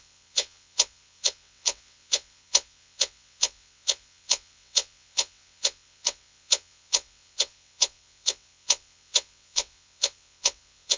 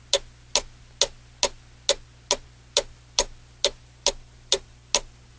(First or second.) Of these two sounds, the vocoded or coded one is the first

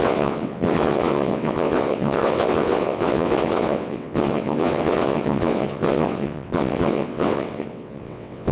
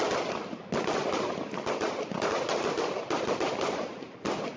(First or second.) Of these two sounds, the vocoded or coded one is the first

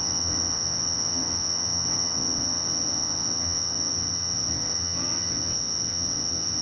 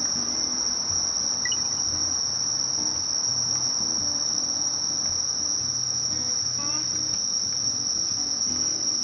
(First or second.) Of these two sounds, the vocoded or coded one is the first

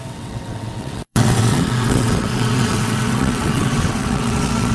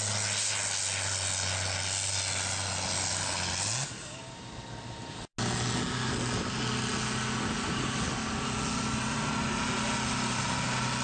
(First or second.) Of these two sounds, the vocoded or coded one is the first